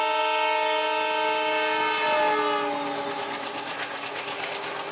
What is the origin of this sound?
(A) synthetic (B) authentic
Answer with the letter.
B